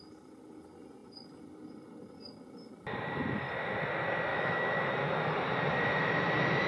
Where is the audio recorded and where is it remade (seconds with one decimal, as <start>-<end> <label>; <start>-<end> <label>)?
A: 0.0-4.3 recorded; 4.3-5.3 remade; 5.3-6.7 recorded